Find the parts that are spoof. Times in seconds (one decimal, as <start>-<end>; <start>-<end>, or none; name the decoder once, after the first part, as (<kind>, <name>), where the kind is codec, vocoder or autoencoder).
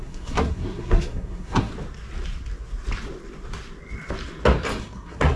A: 0.0-1.7 (codec, SNAC); 4.8-5.4